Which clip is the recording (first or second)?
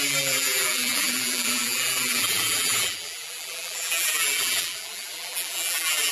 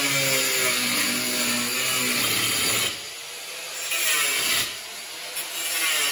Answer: second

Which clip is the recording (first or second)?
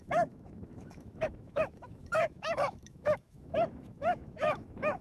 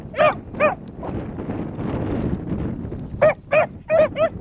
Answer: second